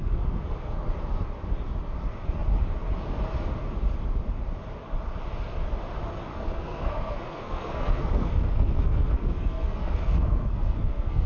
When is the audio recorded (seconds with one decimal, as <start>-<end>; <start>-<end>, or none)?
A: 0.8-6.3